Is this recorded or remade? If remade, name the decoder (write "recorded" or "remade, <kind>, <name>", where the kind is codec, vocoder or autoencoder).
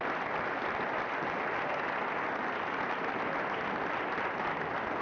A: recorded